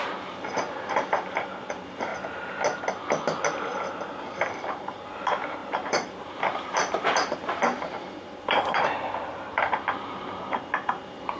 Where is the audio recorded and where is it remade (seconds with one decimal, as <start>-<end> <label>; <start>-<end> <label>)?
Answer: 0.0-2.1 remade; 2.1-4.7 recorded; 4.7-11.4 remade